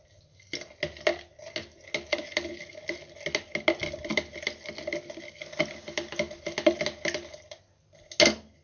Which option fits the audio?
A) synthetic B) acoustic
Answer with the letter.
B